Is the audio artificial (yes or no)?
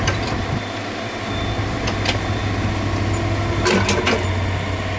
no